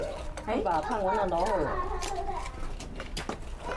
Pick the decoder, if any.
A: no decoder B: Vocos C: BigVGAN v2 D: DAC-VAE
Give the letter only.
A